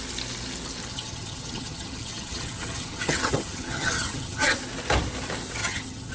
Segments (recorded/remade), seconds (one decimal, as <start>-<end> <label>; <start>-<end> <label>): 0.0-0.9 recorded; 0.9-4.6 remade; 4.6-5.6 recorded; 5.6-6.1 remade